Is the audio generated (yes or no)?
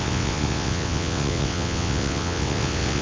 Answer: yes